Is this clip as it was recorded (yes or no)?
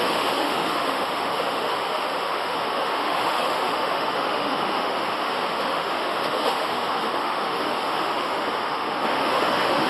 no